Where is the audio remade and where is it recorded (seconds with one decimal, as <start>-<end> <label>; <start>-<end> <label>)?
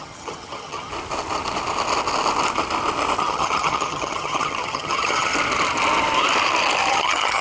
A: 0.0-0.9 remade; 0.9-3.2 recorded; 3.2-5.3 remade; 5.3-6.9 recorded; 6.9-7.4 remade